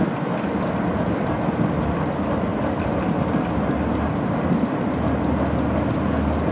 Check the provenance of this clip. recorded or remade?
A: recorded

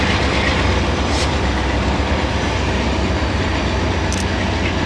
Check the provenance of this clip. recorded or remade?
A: recorded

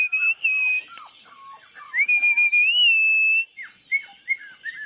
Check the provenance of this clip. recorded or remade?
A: recorded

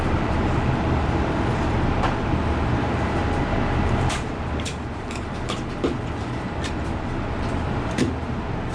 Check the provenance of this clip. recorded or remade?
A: remade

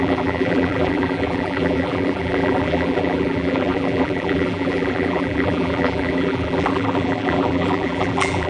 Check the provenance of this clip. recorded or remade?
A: remade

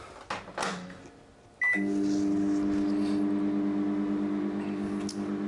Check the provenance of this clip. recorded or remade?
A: recorded